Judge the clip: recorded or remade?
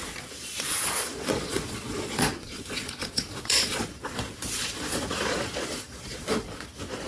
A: remade